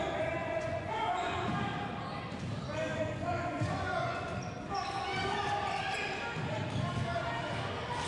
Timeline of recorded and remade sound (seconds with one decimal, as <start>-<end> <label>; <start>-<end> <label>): 0.0-0.4 recorded; 0.4-1.5 remade; 1.5-2.9 recorded; 2.9-4.4 remade; 4.4-8.1 recorded